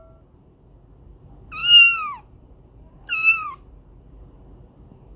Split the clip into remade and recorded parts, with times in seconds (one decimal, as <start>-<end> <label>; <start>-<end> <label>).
0.0-1.6 recorded; 1.6-3.8 remade; 3.8-5.2 recorded